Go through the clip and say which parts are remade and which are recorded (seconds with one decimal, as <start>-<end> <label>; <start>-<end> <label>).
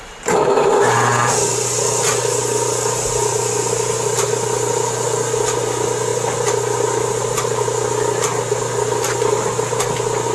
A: 0.0-10.3 recorded